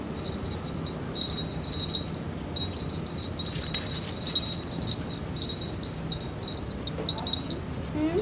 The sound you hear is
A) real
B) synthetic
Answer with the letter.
A